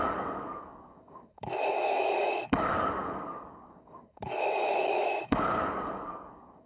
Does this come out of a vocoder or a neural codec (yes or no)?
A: yes